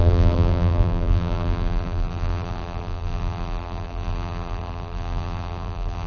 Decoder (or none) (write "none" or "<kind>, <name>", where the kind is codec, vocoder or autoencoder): vocoder, BigVGAN v2